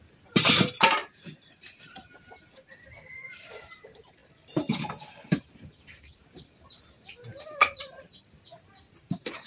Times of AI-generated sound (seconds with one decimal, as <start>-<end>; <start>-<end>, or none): 0.0-4.2; 5.4-9.5